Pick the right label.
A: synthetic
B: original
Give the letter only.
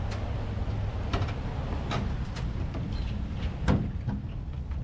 B